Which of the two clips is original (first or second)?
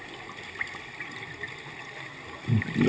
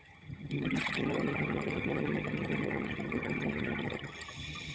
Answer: first